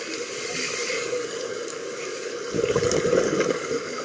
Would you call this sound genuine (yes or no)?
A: no